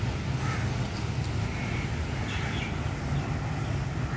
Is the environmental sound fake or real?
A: real